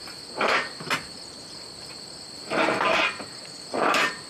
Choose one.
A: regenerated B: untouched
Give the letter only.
A